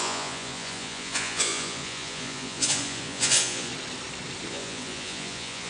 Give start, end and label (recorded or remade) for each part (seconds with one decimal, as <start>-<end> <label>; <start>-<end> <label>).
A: 0.0-3.7 remade; 3.7-4.5 recorded; 4.5-5.7 remade